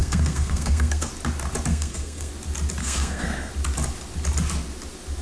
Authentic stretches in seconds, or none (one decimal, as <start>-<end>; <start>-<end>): 1.1-1.7; 2.3-2.8; 3.5-5.2